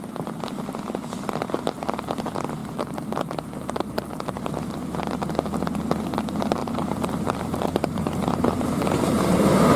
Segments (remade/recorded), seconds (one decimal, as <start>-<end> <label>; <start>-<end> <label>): 0.0-2.6 recorded; 2.6-4.7 remade; 4.7-6.6 recorded; 6.6-9.8 remade